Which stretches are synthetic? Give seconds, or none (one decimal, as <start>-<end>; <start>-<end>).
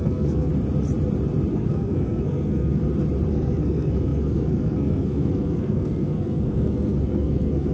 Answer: 0.0-0.5; 1.5-2.8; 3.3-7.7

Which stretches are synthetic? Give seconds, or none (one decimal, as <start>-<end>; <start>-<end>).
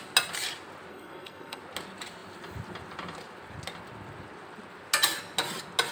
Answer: 0.9-1.6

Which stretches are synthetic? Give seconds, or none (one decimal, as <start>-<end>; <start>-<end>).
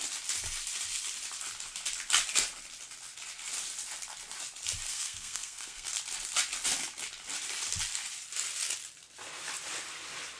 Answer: 4.9-5.9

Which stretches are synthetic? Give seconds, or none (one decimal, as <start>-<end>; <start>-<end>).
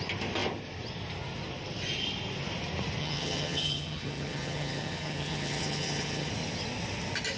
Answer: 3.0-6.3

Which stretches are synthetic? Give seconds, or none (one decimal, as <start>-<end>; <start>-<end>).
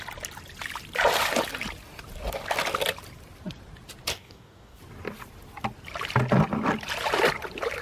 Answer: 4.1-4.8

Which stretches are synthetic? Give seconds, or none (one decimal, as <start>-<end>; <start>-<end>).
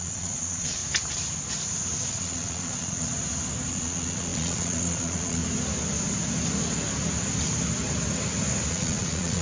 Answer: 0.0-0.8; 2.1-3.1; 3.7-5.4; 8.7-9.4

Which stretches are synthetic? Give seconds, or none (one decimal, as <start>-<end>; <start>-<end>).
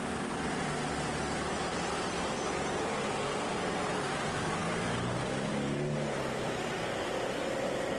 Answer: none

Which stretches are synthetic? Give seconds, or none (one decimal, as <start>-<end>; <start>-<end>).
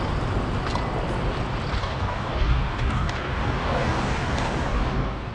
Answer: 1.8-5.3